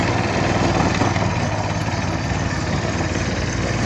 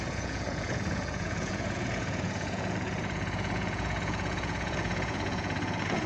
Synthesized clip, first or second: second